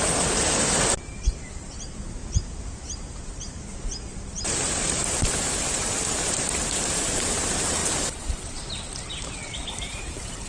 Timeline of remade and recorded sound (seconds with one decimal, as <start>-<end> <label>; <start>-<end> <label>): 0.0-10.5 remade